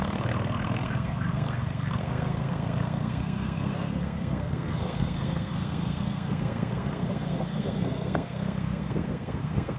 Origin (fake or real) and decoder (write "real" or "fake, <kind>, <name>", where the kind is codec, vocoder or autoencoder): fake, codec, SNAC